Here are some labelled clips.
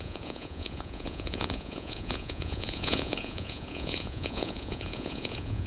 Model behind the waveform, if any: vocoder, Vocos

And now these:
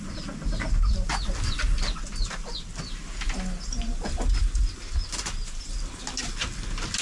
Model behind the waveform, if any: none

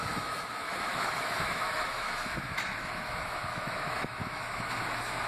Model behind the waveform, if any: autoencoder, DAC-VAE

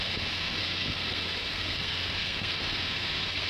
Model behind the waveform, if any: codec, SNAC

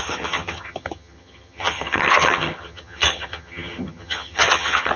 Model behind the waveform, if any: vocoder, HiFi-GAN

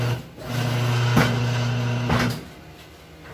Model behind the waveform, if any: none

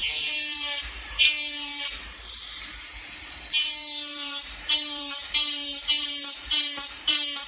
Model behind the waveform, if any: vocoder, BigVGAN v2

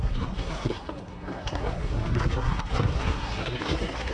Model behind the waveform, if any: codec, SNAC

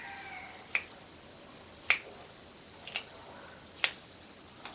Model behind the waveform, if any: none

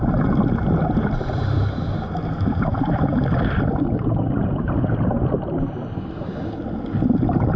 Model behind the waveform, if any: none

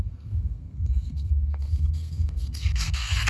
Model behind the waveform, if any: codec, SNAC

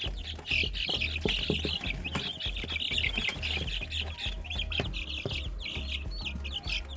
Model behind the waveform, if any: none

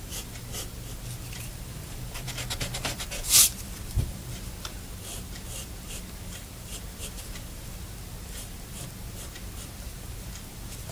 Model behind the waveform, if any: vocoder, BigVGAN v2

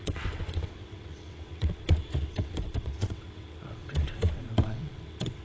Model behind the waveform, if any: vocoder, WaveNeXt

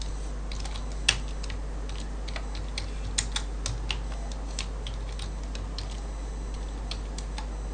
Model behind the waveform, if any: none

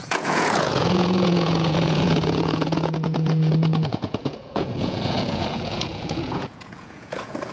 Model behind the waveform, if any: vocoder, Vocos